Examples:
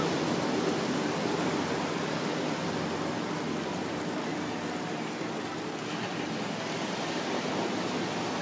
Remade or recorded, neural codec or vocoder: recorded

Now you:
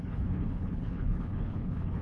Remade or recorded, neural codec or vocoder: remade, codec, HILCodec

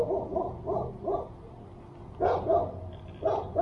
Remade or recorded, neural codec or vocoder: recorded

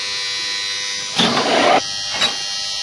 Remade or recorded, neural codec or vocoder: recorded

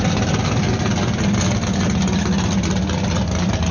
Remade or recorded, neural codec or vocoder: recorded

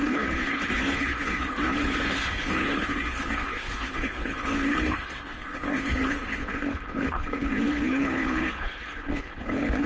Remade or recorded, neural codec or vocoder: remade, codec, HILCodec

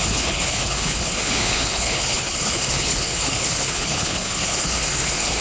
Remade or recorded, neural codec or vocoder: remade, codec, HILCodec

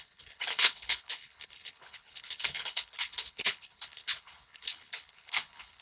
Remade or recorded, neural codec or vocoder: remade, codec, HILCodec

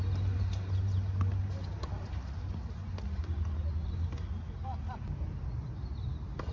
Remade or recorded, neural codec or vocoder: recorded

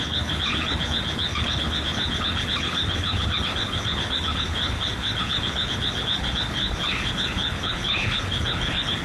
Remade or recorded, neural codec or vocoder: remade, codec, HILCodec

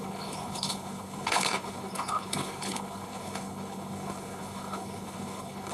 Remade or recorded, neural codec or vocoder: remade, codec, HILCodec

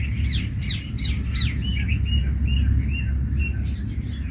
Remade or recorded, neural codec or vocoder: recorded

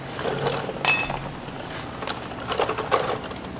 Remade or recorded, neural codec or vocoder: recorded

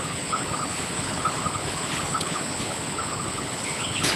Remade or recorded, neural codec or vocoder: remade, codec, HILCodec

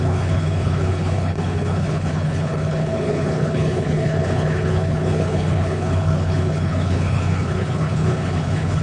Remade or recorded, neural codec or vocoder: remade, codec, HILCodec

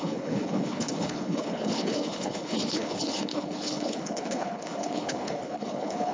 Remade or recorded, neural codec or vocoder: remade, codec, HILCodec